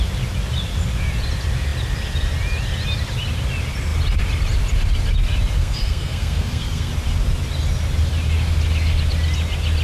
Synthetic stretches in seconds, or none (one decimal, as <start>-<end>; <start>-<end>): 5.6-6.9